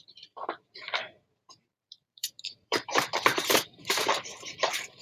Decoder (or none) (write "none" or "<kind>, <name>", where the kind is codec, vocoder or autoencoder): vocoder, BigVGAN v2